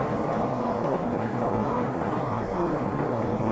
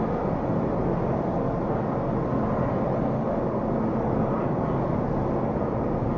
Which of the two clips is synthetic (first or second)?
first